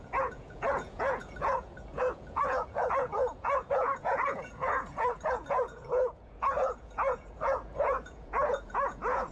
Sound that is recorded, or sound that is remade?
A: remade